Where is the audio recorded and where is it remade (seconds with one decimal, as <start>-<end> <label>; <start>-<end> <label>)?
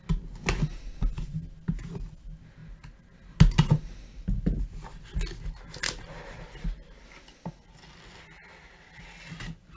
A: 0.0-9.8 recorded